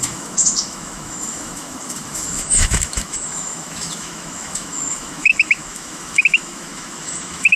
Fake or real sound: fake